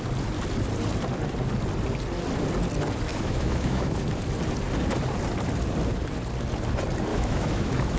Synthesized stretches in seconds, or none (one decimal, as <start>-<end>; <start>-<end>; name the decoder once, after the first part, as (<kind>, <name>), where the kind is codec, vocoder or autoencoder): 3.1-4.0 (autoencoder, DAC-VAE); 7.1-8.0